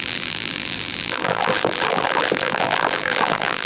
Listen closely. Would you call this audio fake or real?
fake